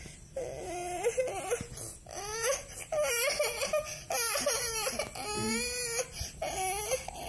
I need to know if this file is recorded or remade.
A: recorded